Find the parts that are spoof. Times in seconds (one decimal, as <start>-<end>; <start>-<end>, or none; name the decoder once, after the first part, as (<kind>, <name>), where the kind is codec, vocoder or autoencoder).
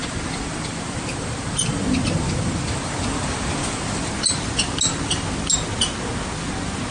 0.0-4.1 (vocoder, BigVGAN v2)